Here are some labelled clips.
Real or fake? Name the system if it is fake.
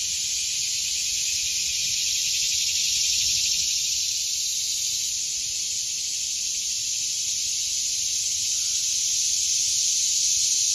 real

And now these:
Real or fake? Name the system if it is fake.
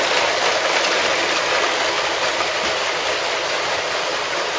real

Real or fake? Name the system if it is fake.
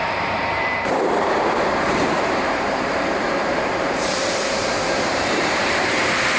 fake, vocoder, BigVGAN v2